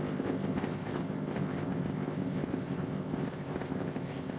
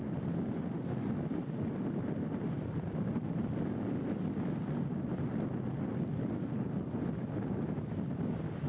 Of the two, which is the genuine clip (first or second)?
second